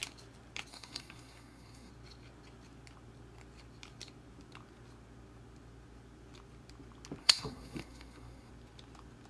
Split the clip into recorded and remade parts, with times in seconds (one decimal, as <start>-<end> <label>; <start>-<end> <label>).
0.0-0.7 recorded; 0.7-1.9 remade; 1.9-7.2 recorded; 7.2-8.5 remade; 8.5-9.3 recorded